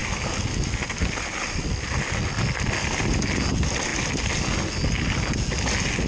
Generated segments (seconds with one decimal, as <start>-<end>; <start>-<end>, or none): none

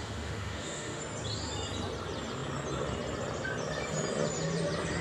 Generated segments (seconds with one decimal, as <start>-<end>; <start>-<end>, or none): 0.0-1.0

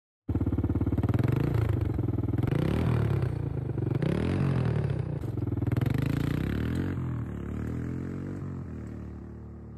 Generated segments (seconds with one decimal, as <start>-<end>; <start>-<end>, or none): none

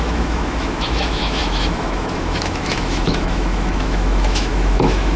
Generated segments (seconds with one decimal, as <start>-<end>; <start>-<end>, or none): 0.0-5.2